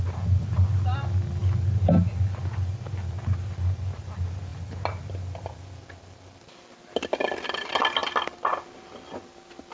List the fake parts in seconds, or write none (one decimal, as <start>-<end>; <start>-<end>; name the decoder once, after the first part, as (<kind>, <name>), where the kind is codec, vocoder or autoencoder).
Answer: none